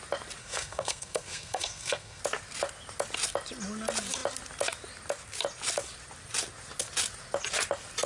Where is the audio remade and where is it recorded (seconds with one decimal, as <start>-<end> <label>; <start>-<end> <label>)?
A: 0.0-0.4 recorded; 0.4-2.2 remade; 2.2-8.1 recorded